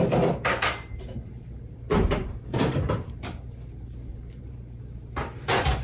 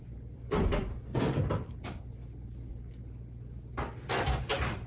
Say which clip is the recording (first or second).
second